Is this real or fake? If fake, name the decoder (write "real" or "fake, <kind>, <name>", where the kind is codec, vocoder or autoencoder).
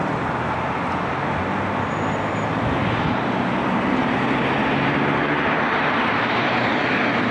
real